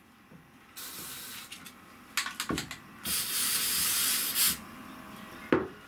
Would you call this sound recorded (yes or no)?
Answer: yes